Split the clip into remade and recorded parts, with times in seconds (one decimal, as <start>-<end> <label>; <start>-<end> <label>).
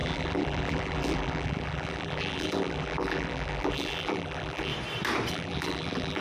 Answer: 0.0-4.7 remade; 4.7-5.3 recorded; 5.3-6.2 remade